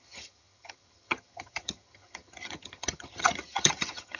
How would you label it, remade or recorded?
remade